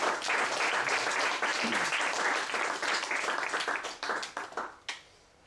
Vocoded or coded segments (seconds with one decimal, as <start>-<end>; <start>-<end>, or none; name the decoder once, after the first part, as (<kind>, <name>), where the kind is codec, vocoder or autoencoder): none